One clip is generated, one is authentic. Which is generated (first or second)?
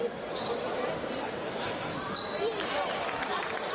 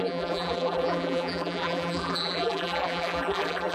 second